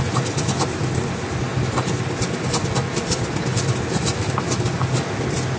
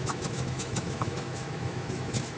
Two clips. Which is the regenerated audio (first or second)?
second